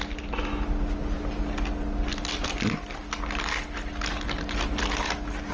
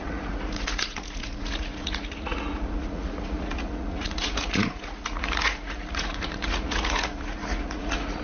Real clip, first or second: first